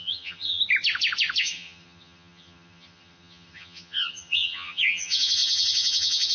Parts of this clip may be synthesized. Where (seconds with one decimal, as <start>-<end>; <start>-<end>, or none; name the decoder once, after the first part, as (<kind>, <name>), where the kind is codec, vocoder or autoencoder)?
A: 0.0-0.6 (vocoder, HiFi-GAN); 1.4-6.3